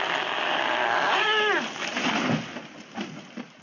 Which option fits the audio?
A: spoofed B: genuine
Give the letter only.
B